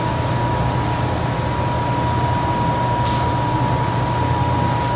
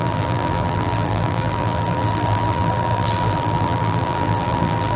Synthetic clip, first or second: second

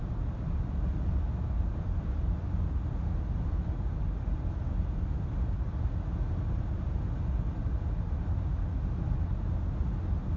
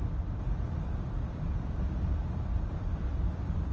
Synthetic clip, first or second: second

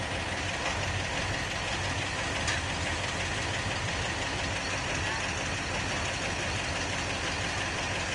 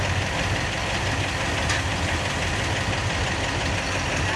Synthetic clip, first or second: second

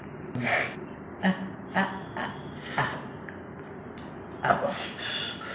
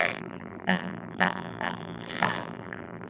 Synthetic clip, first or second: second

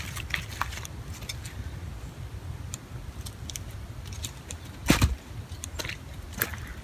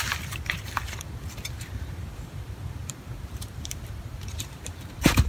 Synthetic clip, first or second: second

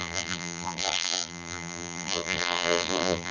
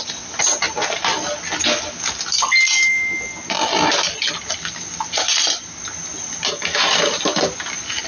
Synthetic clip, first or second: first